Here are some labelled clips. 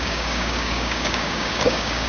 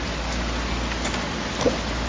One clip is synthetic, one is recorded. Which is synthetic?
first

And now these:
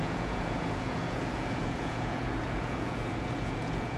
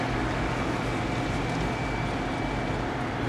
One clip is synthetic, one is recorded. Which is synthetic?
first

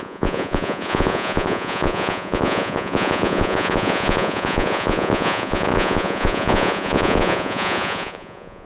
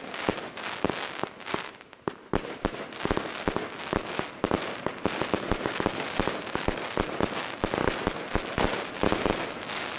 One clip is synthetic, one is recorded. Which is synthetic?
first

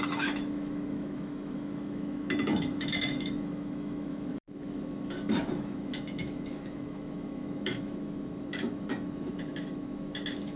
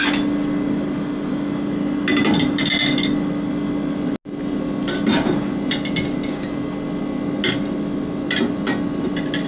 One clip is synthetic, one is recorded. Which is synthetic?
first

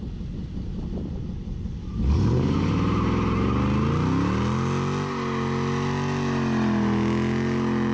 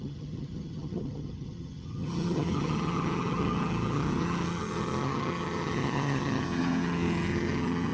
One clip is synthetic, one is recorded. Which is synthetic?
second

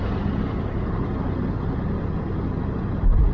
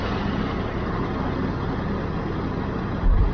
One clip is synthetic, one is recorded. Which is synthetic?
first